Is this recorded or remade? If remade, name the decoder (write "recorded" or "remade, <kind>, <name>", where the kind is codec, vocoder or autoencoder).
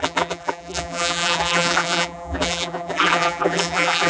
remade, vocoder, BigVGAN v2